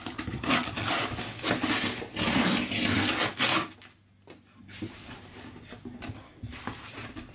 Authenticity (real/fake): real